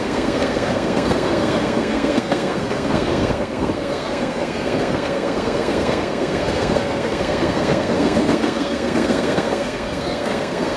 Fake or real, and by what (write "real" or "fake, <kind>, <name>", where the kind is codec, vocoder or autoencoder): fake, codec, SNAC